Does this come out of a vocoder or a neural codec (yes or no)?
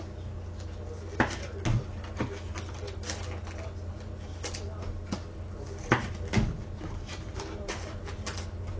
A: no